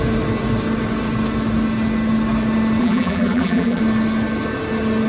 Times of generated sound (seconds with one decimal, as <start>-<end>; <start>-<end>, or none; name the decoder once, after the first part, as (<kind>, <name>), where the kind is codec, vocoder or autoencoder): 2.8-3.8 (vocoder, BigVGAN v2)